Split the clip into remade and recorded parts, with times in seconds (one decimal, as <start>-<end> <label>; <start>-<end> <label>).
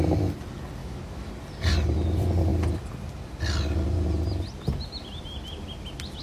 0.0-0.8 recorded; 0.8-1.3 remade; 1.3-6.2 recorded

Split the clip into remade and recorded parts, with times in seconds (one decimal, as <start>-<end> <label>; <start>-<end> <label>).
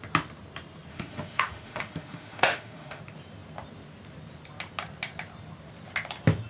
0.0-0.9 recorded; 0.9-3.0 remade; 3.0-6.5 recorded